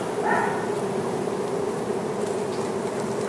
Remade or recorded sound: recorded